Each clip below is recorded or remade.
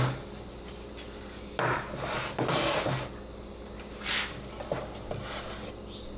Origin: recorded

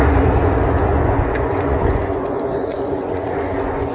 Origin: remade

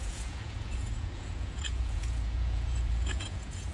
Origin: remade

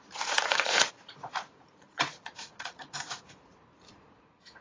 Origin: remade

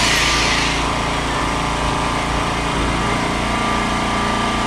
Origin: recorded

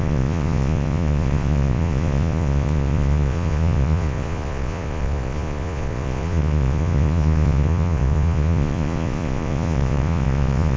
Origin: remade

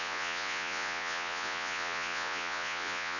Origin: remade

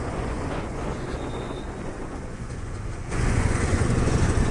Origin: remade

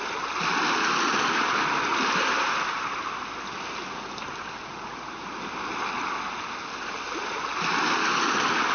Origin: recorded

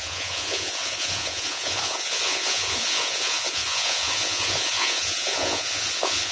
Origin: remade